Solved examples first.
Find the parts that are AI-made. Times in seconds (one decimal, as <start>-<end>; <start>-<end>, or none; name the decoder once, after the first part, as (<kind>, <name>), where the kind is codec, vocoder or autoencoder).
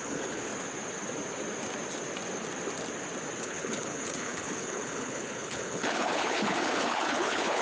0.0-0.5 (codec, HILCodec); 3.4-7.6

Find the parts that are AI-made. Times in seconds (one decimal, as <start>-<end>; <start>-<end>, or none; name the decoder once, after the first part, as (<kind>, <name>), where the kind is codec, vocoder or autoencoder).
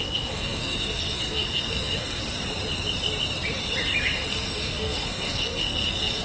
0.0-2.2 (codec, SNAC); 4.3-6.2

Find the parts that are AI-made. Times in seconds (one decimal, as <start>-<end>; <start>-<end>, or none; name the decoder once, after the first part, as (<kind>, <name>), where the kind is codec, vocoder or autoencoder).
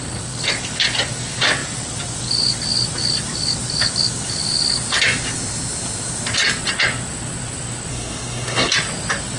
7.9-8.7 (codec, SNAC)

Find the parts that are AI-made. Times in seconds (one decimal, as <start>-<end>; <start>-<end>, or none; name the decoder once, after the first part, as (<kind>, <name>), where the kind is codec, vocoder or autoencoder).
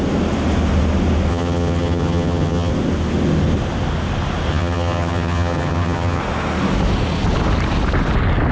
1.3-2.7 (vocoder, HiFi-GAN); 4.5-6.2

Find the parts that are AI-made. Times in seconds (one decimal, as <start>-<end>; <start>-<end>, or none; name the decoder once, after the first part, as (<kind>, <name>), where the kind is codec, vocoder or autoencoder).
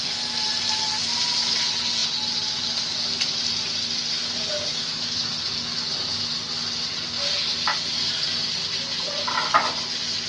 4.7-5.3 (autoencoder, DAC-VAE)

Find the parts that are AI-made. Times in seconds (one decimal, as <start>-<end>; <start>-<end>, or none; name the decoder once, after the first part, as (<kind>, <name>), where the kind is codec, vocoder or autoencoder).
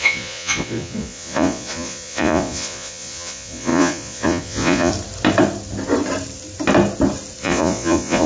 0.0-4.9 (vocoder, Vocos); 7.4-8.3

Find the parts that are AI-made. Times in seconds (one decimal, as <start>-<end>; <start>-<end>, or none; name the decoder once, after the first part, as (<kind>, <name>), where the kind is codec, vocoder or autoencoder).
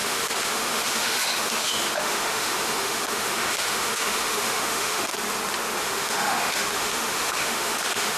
0.0-5.1 (autoencoder, DAC-VAE); 5.8-8.2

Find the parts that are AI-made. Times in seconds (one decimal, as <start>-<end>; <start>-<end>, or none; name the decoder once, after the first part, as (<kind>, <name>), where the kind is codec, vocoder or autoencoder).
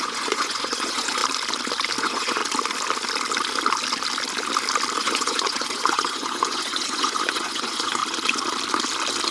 0.0-1.2 (vocoder, Vocos); 2.0-2.4; 5.0-8.0